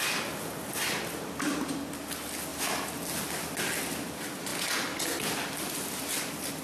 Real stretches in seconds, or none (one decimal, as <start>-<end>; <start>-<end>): 0.0-6.6